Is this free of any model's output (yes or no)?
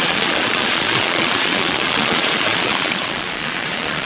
no